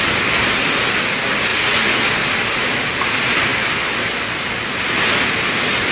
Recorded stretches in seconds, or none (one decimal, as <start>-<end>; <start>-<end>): 0.0-1.5; 2.1-5.9